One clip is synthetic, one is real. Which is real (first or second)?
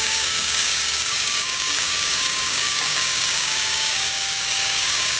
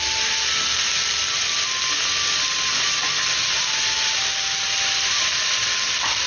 second